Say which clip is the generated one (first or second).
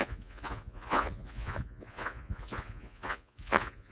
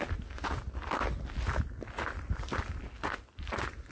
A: first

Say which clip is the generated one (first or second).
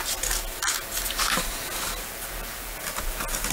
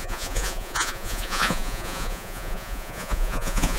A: second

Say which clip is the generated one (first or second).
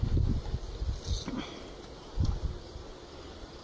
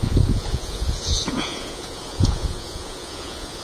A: second